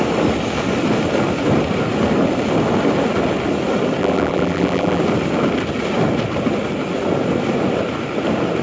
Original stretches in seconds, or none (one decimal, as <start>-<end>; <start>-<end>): 0.0-4.0; 5.0-8.6